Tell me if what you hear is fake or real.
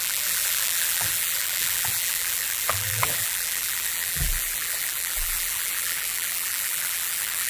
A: fake